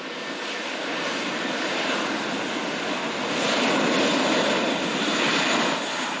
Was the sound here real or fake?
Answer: real